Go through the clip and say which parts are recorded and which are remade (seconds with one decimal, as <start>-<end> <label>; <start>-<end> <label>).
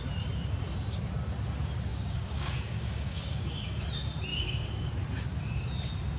0.0-1.9 recorded; 1.9-3.8 remade; 3.8-4.3 recorded; 4.3-4.9 remade; 4.9-6.2 recorded